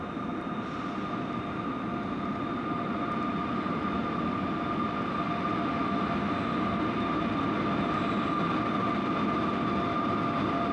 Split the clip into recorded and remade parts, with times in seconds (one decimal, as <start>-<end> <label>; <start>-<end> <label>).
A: 0.0-10.7 recorded